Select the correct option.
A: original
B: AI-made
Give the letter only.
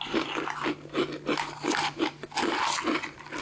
A